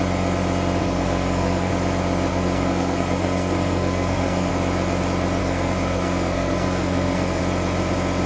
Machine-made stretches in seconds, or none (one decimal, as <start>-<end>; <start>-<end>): 0.8-1.7; 2.3-4.5; 5.4-7.4